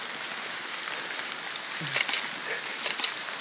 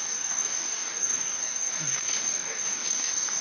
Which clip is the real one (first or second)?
first